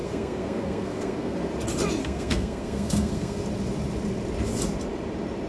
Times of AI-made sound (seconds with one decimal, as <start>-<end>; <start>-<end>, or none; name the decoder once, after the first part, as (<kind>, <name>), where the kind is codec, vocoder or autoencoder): 0.0-1.4 (codec, SNAC); 2.0-3.4